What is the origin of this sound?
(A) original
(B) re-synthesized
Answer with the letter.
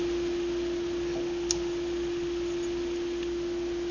A